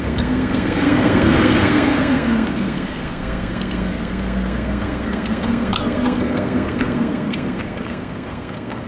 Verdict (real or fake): fake